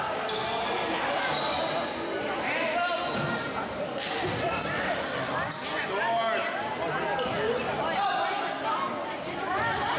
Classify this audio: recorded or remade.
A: recorded